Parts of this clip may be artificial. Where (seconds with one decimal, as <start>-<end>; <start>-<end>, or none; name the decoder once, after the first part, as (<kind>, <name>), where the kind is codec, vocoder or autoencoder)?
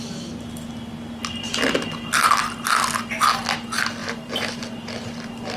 4.0-4.6 (vocoder, BigVGAN v2)